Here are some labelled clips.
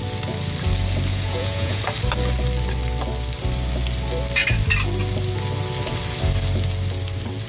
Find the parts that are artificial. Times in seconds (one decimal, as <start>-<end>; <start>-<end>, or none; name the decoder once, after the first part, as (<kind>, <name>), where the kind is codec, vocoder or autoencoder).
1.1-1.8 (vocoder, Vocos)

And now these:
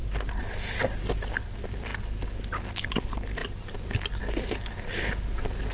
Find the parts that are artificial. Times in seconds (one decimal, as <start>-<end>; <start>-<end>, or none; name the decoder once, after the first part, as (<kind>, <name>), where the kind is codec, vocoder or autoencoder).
none

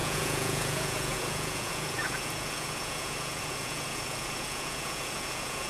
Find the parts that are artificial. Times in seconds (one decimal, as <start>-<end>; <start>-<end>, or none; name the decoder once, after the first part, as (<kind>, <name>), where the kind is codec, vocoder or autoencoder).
0.0-5.7 (vocoder, Vocos)

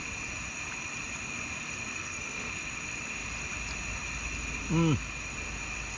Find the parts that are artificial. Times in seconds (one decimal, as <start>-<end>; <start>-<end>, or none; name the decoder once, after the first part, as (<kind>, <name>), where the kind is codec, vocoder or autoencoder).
1.9-2.5 (codec, SNAC)

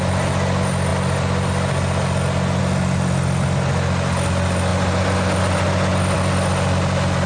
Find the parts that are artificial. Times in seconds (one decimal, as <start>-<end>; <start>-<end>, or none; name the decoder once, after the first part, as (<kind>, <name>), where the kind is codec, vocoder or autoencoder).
none